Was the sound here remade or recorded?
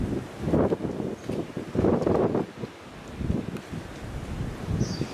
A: recorded